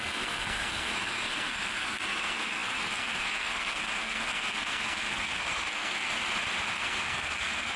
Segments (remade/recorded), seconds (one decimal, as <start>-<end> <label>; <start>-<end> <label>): 0.0-6.1 remade; 6.1-6.7 recorded; 6.7-7.8 remade